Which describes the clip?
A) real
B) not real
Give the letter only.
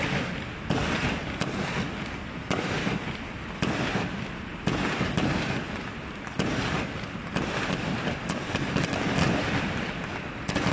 A